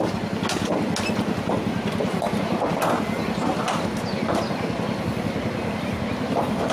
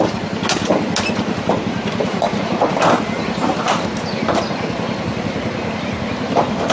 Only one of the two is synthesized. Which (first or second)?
second